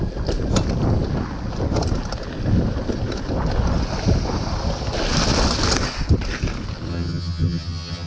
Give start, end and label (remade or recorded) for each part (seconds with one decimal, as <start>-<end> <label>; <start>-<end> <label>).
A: 0.0-6.9 recorded; 6.9-8.1 remade